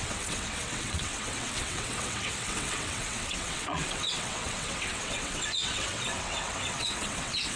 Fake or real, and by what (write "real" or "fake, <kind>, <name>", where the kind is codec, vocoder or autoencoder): fake, vocoder, WaveNeXt